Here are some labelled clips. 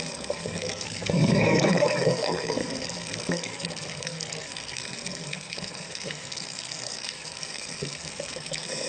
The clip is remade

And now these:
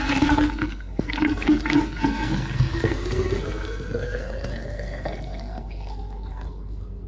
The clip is remade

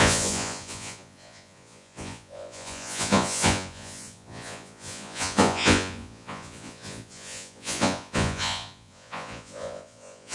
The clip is remade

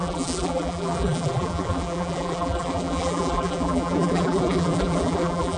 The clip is remade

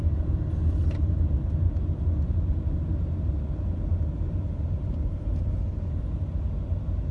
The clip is recorded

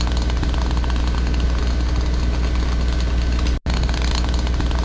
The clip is recorded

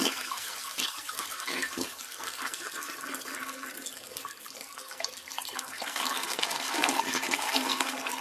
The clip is remade